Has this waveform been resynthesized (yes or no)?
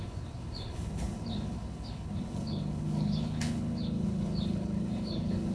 yes